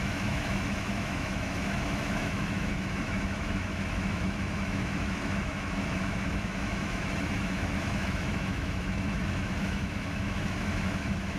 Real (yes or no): no